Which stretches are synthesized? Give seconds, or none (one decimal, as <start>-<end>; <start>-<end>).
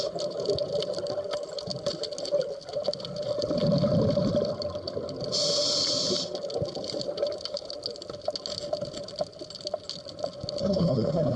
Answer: 10.6-11.4